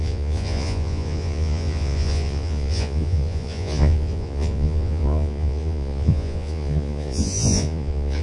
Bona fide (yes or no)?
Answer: no